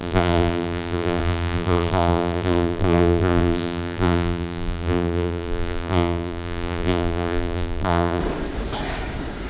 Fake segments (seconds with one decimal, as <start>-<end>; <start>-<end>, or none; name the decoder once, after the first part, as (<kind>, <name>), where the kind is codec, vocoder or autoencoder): 0.0-8.2 (vocoder, BigVGAN v2)